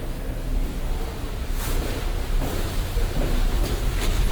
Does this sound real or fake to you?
real